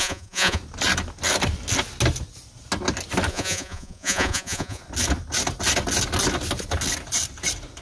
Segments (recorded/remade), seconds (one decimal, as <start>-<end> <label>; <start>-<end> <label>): 0.0-0.6 remade; 0.6-3.3 recorded; 3.3-4.8 remade; 4.8-7.8 recorded